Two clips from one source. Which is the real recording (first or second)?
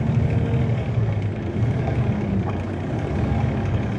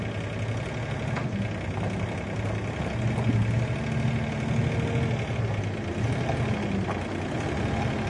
second